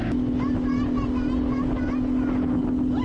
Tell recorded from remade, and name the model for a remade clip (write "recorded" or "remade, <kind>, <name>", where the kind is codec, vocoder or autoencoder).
recorded